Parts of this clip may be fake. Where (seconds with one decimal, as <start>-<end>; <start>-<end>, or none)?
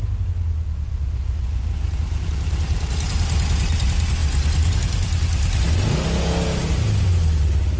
none